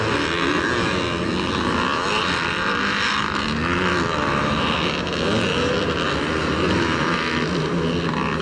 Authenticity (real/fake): real